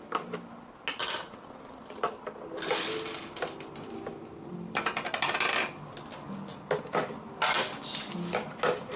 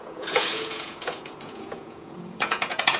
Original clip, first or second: first